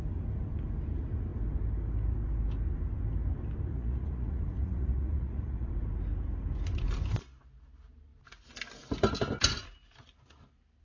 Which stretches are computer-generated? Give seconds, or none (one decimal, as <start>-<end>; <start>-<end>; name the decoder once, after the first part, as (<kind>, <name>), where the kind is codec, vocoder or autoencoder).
3.7-5.7 (vocoder, Vocos)